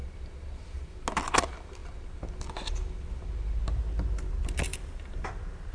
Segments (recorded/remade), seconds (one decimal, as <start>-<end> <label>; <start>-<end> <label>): 0.0-4.7 recorded; 4.7-5.3 remade; 5.3-5.7 recorded

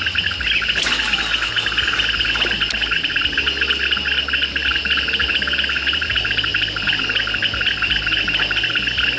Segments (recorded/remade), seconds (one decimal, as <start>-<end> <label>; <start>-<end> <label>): 0.0-9.2 recorded